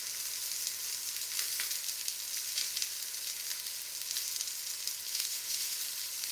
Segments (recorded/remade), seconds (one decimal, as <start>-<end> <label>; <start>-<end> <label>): 0.0-5.1 recorded; 5.1-5.8 remade; 5.8-6.3 recorded